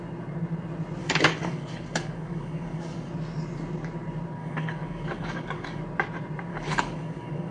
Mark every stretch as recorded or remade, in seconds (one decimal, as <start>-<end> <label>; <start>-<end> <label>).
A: 0.0-1.0 recorded; 1.0-3.1 remade; 3.1-4.4 recorded; 4.4-5.8 remade; 5.8-6.5 recorded; 6.5-7.5 remade